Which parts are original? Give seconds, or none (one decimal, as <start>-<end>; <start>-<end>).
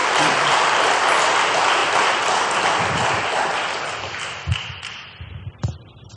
0.0-6.2